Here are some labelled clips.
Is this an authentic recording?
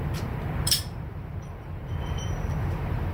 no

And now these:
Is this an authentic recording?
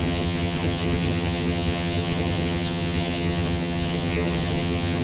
no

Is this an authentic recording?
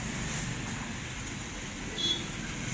yes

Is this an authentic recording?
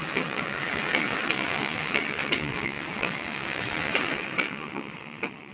no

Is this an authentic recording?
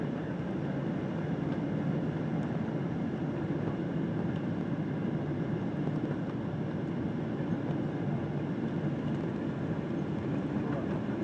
yes